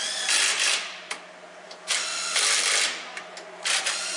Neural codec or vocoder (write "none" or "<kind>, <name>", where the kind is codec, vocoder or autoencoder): none